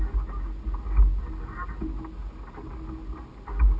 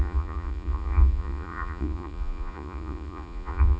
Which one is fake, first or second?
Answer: second